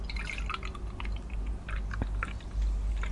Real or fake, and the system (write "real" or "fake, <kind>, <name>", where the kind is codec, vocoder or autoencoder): real